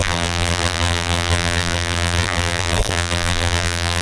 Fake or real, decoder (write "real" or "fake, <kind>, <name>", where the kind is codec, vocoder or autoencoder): fake, vocoder, BigVGAN v2